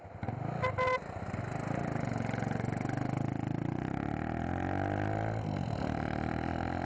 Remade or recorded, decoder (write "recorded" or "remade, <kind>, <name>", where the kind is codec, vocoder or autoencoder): recorded